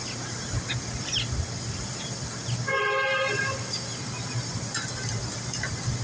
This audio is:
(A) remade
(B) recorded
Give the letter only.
B